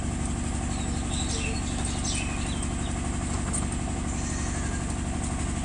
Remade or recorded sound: recorded